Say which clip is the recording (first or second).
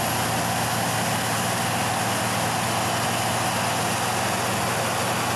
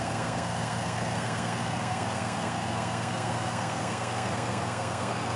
first